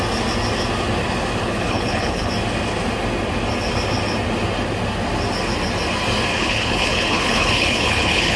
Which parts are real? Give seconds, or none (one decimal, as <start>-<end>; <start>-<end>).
0.0-1.4; 2.3-6.3